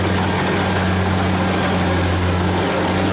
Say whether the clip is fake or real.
real